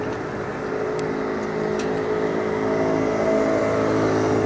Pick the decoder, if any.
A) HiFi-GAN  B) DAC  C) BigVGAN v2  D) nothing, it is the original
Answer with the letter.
D